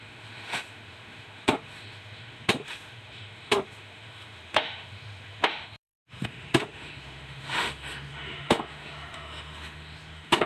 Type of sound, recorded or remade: remade